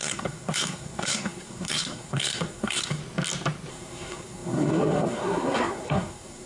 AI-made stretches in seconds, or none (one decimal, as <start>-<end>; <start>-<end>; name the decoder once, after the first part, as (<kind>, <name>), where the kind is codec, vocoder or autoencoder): 0.0-3.0 (codec, SNAC); 3.7-6.5